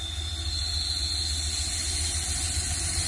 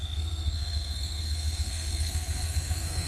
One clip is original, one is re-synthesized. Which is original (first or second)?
first